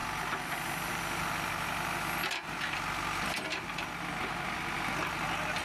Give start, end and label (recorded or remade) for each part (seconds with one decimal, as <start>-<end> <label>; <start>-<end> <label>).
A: 0.0-5.6 recorded